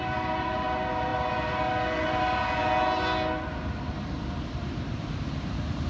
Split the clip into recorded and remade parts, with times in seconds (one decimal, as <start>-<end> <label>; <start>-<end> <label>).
0.0-2.6 remade; 2.6-3.9 recorded; 3.9-5.9 remade